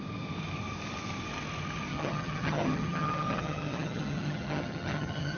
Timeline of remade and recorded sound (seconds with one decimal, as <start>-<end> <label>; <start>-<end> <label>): 0.0-1.9 recorded; 1.9-5.4 remade